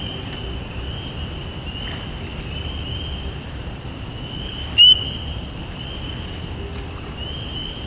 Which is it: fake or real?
real